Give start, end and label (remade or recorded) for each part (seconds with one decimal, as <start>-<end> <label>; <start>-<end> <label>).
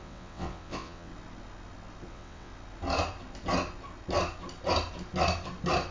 0.0-1.1 remade; 1.1-2.1 recorded; 2.1-2.5 remade; 2.5-5.9 recorded